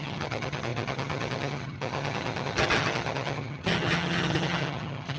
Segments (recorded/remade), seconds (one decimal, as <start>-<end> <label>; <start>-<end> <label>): 0.0-5.2 remade